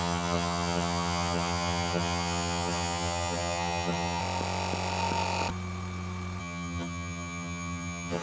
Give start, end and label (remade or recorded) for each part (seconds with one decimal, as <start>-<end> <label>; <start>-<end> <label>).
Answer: 0.0-4.2 remade; 4.2-6.4 recorded; 6.4-8.2 remade